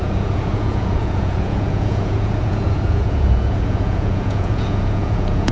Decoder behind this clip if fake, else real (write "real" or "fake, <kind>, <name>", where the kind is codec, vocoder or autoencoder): fake, vocoder, Vocos